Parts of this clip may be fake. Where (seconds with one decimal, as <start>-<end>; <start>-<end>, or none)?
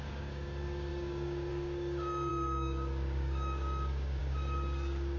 0.0-5.2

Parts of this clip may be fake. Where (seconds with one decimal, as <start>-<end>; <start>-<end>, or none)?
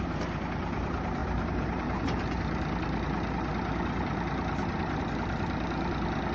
1.2-5.0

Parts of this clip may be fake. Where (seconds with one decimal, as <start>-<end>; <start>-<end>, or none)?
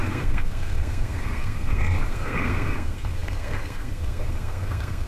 0.0-5.1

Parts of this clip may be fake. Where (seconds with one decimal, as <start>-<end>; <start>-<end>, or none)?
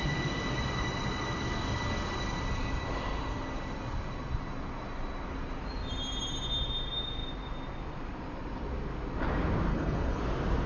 9.7-10.2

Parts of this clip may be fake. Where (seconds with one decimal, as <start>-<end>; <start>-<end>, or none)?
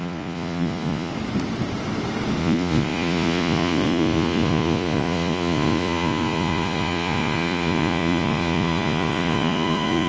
0.0-1.1; 2.4-10.1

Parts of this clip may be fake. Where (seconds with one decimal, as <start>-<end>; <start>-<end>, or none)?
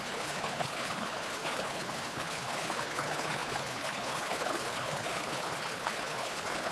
0.0-6.7